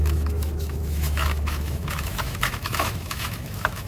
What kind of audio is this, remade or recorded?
remade